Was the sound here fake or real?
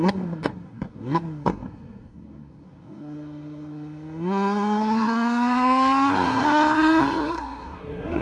fake